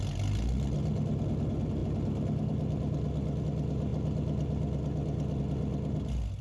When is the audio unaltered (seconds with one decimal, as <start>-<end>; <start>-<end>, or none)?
0.0-6.4